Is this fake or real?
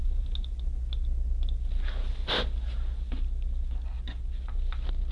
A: real